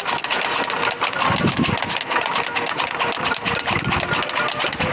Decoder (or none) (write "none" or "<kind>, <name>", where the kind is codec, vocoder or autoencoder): none